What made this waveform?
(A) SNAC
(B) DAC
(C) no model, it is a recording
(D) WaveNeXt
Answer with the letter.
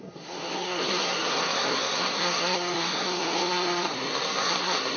A